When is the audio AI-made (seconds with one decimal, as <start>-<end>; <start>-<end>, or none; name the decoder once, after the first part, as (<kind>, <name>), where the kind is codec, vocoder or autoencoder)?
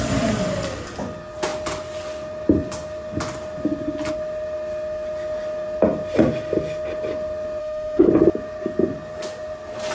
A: 7.6-8.1 (autoencoder, DAC-VAE)